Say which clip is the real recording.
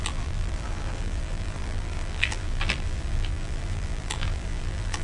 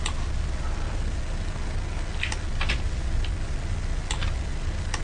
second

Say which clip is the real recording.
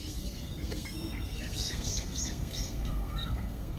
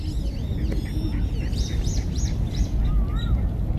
second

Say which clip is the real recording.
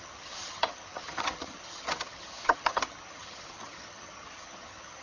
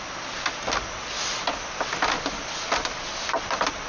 second